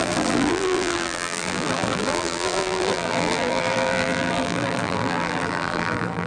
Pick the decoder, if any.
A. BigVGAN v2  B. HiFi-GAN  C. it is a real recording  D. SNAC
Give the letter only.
A